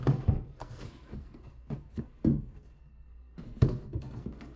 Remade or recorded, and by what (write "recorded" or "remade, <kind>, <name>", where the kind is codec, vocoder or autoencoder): remade, codec, SNAC